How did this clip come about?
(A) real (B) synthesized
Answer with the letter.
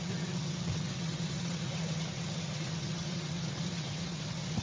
B